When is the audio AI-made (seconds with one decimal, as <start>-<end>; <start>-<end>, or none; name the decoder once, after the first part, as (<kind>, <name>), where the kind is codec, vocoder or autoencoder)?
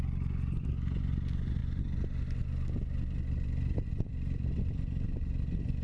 none